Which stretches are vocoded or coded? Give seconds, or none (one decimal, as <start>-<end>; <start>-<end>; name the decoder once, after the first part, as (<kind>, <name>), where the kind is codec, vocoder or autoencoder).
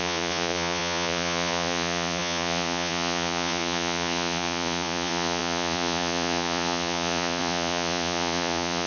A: 0.0-8.9 (vocoder, Vocos)